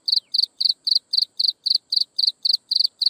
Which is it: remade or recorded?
remade